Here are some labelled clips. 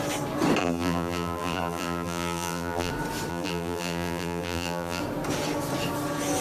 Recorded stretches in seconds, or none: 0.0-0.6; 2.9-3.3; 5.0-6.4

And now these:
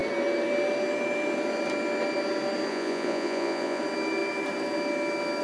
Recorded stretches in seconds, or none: 0.0-2.7; 3.8-5.4

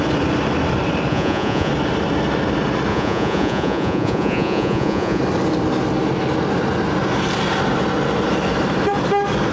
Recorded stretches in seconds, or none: 0.0-1.1; 1.7-2.9; 5.2-9.5

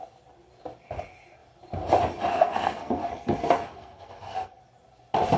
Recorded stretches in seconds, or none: 0.0-2.3; 4.6-5.4

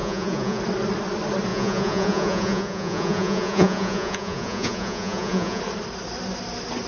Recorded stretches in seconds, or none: 0.6-1.5; 5.6-6.9

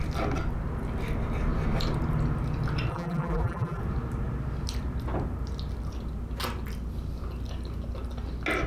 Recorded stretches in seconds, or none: 0.0-2.9; 3.8-8.7

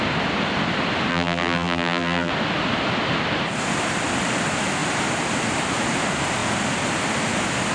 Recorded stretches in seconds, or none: 0.0-1.1; 2.3-7.7

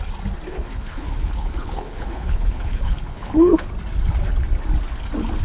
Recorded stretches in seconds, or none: 0.0-0.5; 3.7-5.4